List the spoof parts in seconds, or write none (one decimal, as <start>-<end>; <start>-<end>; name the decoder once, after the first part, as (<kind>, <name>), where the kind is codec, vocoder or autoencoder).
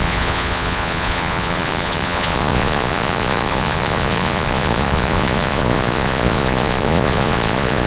0.0-7.9 (vocoder, Vocos)